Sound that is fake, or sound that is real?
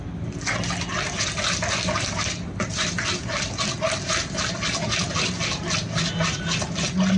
real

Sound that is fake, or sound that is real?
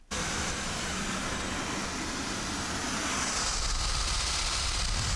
real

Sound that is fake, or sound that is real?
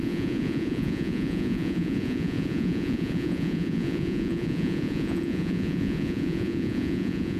fake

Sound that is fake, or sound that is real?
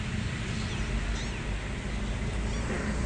real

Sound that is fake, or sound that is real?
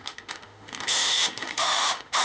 fake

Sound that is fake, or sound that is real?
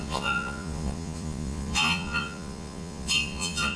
fake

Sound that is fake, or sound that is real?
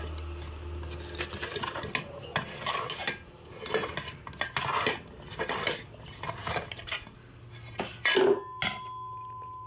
real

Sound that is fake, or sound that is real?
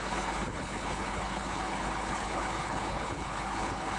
fake